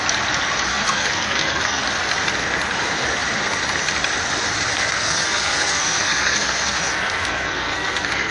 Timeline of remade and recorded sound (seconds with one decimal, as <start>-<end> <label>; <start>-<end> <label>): 0.0-0.7 recorded; 0.7-1.8 remade; 1.8-4.7 recorded; 4.7-8.3 remade